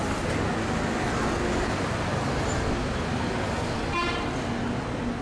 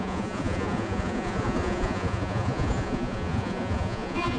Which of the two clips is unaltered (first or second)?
first